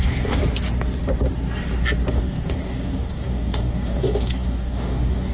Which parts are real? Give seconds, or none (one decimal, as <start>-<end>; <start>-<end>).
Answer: 0.4-2.1